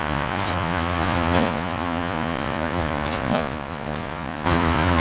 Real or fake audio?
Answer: fake